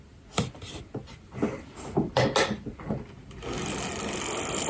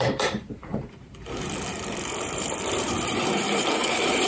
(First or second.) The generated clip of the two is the second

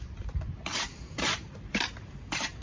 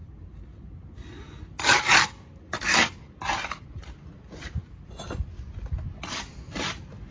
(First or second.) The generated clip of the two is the first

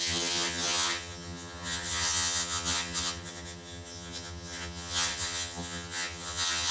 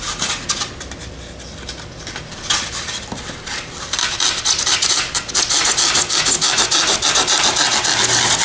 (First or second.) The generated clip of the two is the first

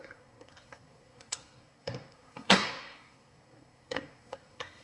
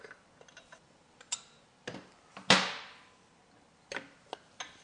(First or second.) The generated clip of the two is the first